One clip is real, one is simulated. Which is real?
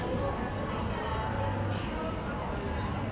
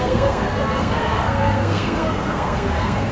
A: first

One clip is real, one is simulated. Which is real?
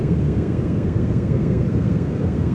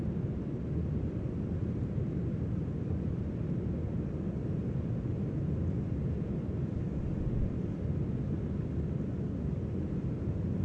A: second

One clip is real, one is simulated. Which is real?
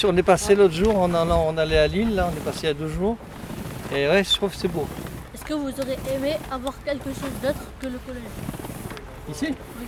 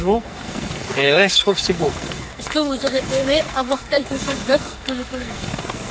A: first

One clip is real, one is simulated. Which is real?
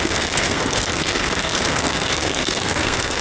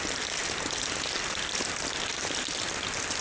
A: second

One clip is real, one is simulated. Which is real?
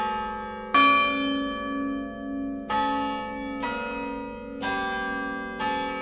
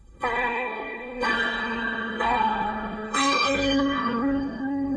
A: first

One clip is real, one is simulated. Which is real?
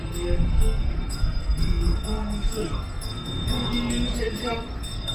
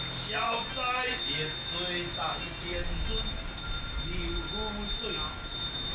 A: second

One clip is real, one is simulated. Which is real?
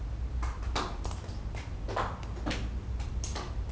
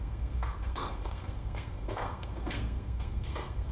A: first